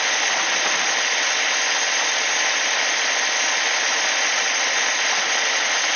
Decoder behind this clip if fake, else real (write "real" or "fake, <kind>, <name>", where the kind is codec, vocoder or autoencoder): real